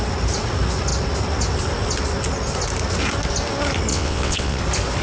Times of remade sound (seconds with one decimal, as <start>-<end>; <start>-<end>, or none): 3.9-4.6